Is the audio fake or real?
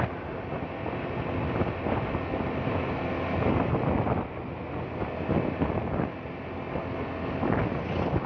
real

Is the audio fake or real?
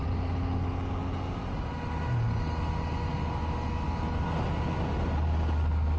real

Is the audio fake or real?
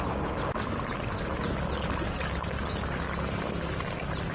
real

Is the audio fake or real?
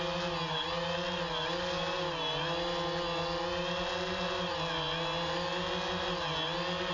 real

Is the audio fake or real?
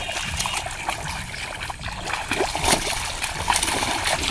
real